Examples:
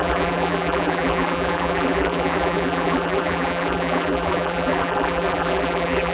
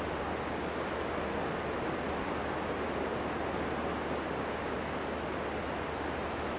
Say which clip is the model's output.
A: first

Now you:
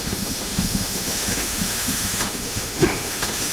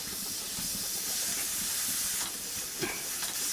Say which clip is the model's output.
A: first